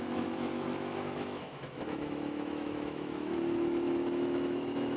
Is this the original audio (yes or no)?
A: no